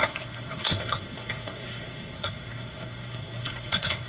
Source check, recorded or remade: remade